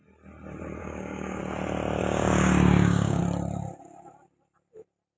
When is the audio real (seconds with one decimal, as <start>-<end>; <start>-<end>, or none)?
0.0-0.8; 1.4-2.0; 3.2-5.2